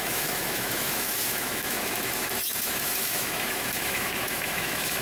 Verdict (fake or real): fake